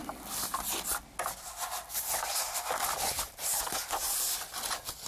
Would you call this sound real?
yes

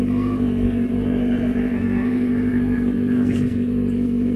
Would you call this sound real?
no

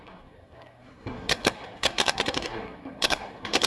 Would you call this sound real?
no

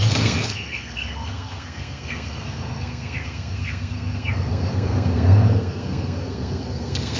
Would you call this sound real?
no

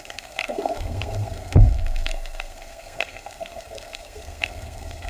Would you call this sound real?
no